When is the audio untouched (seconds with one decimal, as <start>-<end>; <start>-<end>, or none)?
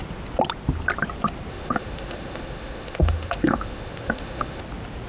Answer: 0.0-1.5; 4.6-5.1